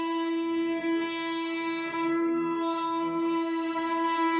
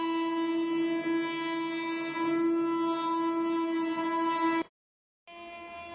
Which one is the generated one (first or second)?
first